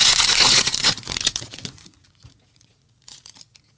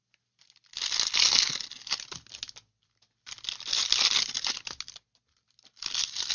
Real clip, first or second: second